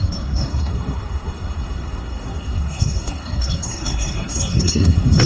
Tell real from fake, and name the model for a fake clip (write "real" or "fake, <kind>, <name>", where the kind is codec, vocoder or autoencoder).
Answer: fake, codec, SNAC